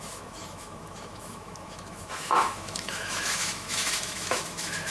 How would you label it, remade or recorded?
remade